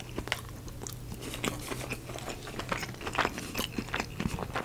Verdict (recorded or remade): recorded